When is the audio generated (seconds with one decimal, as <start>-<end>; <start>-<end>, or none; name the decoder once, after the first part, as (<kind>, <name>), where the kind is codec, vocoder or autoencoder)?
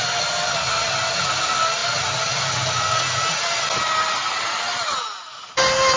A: none